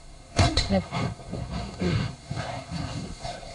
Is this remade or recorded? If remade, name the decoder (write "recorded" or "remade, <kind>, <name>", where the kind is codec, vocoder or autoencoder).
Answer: remade, codec, SNAC